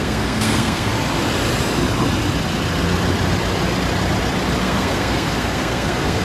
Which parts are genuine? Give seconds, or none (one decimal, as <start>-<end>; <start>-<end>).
0.9-4.6